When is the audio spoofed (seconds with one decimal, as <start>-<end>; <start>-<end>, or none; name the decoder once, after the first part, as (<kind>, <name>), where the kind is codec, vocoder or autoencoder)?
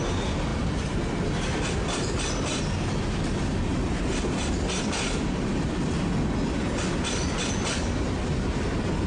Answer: none